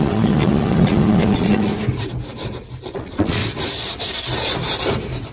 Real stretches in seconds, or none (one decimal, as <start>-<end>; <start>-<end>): 1.7-2.8; 3.4-5.3